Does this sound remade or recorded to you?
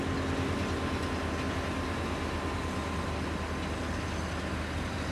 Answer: recorded